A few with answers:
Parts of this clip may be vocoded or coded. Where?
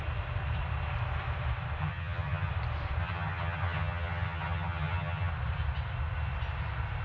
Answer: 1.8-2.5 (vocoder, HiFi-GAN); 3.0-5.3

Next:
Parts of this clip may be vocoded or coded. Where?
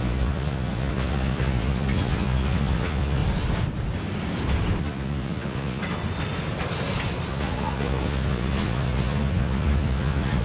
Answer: 0.0-3.2 (vocoder, Vocos); 4.8-5.8; 7.3-10.4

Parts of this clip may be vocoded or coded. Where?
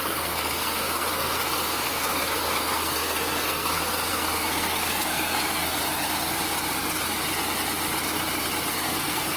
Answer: 0.0-5.8 (codec, SNAC); 8.7-9.4